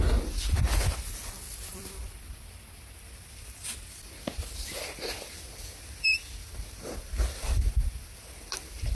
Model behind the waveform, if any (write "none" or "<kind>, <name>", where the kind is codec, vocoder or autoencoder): none